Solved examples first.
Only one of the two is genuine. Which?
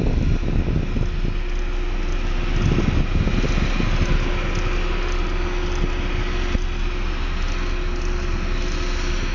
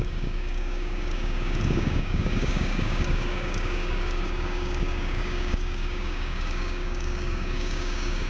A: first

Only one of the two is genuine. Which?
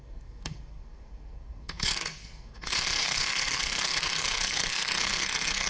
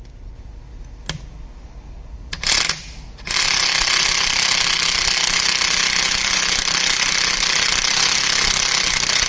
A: second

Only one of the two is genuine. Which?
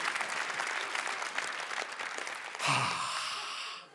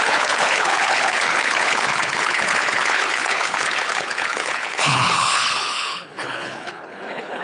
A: first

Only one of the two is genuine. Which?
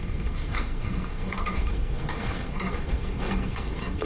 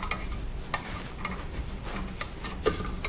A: second